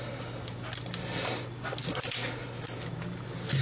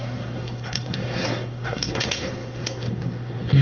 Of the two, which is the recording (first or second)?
first